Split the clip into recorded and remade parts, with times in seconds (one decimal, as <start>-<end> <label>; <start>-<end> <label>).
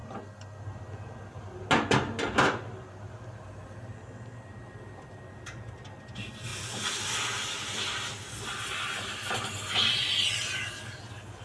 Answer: 0.0-11.4 recorded